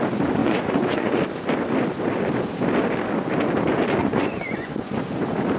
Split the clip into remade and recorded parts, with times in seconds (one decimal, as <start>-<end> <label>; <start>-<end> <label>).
0.0-0.4 recorded; 0.4-1.2 remade; 1.2-4.0 recorded; 4.0-4.9 remade; 4.9-5.6 recorded